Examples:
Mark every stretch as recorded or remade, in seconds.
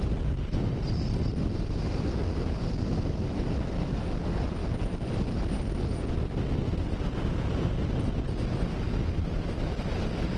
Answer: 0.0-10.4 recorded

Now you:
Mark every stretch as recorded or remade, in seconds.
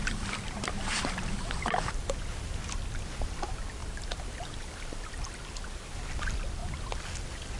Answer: 0.0-2.6 remade; 2.6-3.8 recorded; 3.8-5.3 remade; 5.3-6.6 recorded; 6.6-7.6 remade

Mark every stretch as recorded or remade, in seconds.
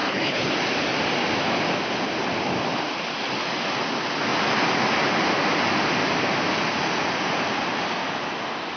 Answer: 0.0-0.5 remade; 0.5-8.8 recorded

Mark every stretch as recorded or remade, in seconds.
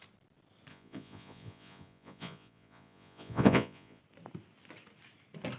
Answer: 0.0-0.7 recorded; 0.7-4.0 remade; 4.0-5.6 recorded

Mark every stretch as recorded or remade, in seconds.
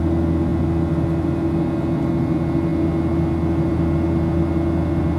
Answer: 0.0-5.2 recorded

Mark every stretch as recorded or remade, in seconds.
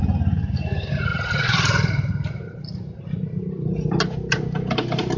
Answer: 0.0-5.2 recorded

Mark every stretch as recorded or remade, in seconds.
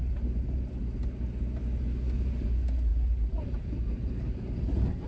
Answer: 0.0-2.9 recorded; 2.9-5.1 remade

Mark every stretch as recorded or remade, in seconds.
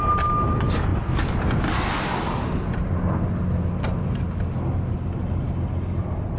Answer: 0.0-6.4 recorded